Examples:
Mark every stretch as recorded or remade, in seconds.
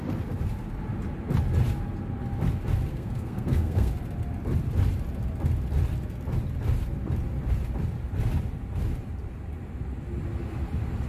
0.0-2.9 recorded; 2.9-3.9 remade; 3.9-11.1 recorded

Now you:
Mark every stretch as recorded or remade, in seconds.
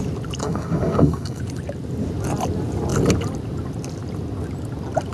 0.0-0.4 recorded; 0.4-1.4 remade; 1.4-5.1 recorded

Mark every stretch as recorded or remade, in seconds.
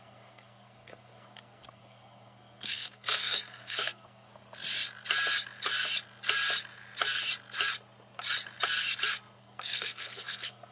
0.0-4.3 remade; 4.3-9.4 recorded; 9.4-10.7 remade